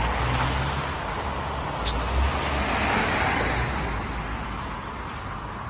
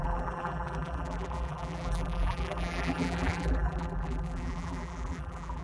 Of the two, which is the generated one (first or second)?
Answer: second